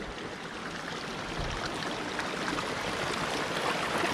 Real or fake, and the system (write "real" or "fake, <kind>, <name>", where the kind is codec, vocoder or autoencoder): real